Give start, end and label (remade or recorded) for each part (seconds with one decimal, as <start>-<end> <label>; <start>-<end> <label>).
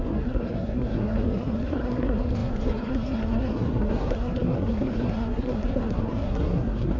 0.0-7.0 remade